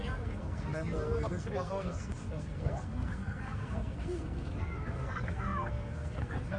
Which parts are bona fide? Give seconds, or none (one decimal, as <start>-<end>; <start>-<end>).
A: none